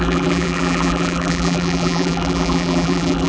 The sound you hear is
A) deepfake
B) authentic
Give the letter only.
A